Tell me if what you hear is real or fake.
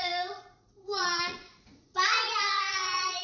fake